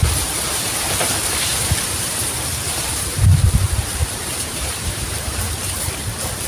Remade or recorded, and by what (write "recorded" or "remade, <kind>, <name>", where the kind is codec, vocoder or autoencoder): remade, vocoder, BigVGAN v2